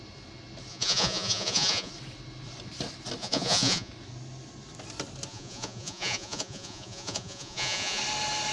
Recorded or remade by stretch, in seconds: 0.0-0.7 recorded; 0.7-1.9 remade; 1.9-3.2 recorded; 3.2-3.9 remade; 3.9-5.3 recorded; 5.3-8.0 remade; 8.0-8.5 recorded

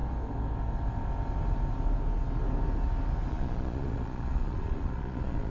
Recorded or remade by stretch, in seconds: 0.0-3.3 recorded; 3.3-5.5 remade